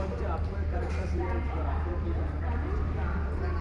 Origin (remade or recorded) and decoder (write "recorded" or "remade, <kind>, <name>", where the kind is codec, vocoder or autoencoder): remade, vocoder, BigVGAN v2